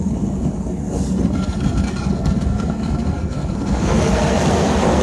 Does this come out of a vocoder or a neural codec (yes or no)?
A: yes